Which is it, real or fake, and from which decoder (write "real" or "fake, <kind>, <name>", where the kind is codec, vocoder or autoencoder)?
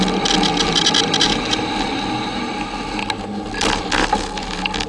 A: real